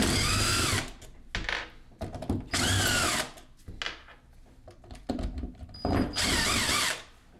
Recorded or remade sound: recorded